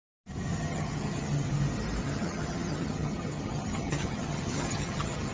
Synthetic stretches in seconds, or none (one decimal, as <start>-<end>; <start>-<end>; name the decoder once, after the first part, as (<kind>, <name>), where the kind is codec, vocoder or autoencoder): 0.5-1.5 (vocoder, HiFi-GAN); 2.0-5.3